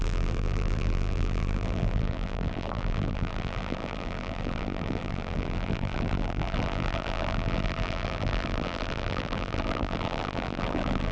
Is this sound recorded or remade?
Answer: remade